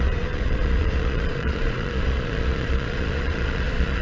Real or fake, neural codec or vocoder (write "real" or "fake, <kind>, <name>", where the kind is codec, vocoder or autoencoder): fake, vocoder, Vocos